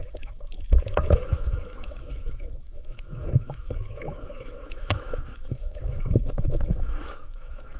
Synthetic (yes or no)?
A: yes